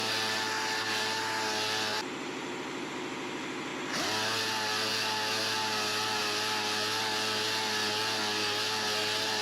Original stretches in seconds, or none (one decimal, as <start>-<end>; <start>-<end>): 0.0-1.9; 2.9-9.4